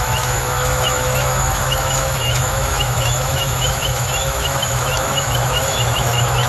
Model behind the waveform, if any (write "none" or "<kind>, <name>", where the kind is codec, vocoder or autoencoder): autoencoder, DAC-VAE